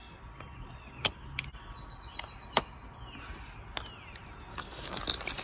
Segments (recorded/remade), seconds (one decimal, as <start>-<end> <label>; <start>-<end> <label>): 0.0-4.5 recorded; 4.5-5.0 remade; 5.0-5.4 recorded